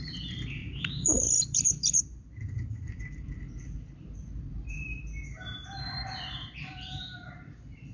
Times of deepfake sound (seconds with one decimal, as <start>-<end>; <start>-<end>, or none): 0.0-7.9